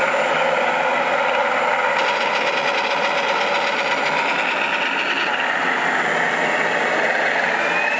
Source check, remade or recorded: recorded